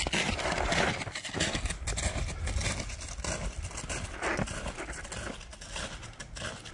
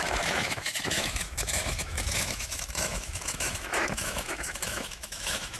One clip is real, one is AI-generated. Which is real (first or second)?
first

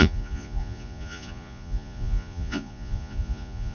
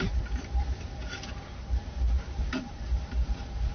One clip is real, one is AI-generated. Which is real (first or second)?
second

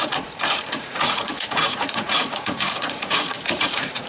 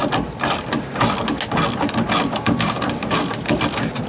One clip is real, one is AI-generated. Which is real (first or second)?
second